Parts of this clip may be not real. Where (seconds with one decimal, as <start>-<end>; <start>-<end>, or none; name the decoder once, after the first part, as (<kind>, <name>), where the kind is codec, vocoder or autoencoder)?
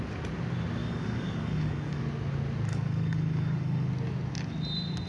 0.8-2.0 (codec, DAC); 2.7-3.9